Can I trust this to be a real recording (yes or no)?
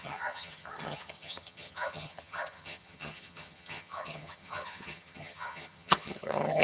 no